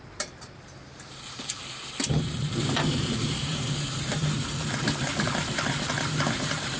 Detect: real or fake fake